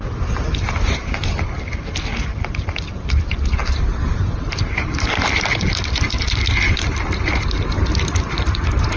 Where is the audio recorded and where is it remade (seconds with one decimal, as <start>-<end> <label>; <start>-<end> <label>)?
0.0-9.0 recorded